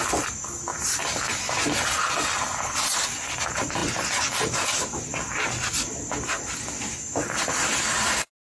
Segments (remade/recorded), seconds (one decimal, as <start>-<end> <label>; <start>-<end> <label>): 0.0-8.6 recorded